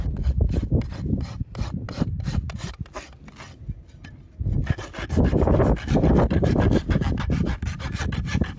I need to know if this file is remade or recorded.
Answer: recorded